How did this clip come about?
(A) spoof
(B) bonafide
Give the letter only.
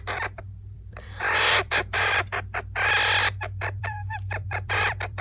A